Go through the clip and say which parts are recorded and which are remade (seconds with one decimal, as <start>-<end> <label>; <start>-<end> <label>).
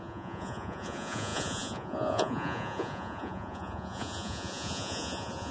0.0-5.5 remade